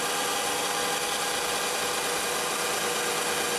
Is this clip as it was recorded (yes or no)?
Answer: yes